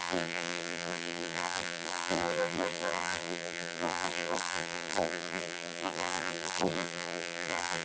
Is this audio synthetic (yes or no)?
yes